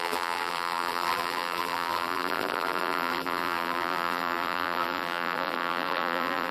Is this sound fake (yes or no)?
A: yes